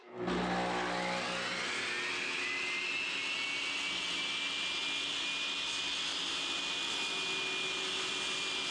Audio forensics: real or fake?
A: real